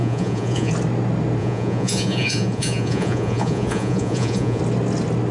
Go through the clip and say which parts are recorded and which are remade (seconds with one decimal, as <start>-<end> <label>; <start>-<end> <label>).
0.0-0.7 remade; 0.7-1.4 recorded; 1.4-4.6 remade; 4.6-5.3 recorded